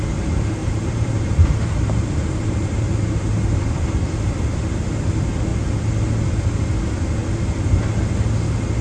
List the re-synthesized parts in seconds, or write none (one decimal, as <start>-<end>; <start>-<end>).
0.6-3.9